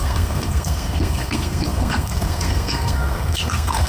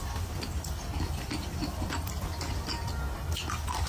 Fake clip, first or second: first